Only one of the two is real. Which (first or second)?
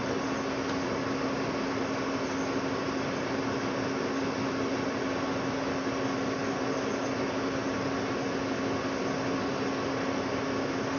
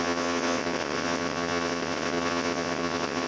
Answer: first